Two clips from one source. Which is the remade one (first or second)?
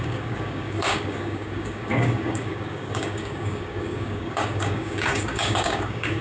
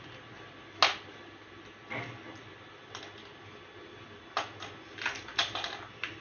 first